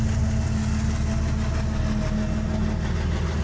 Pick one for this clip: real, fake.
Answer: real